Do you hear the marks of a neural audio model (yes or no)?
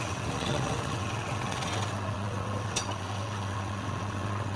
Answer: yes